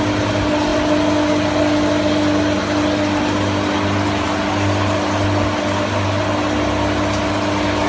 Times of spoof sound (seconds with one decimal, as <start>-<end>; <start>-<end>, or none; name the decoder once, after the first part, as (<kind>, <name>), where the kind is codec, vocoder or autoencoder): none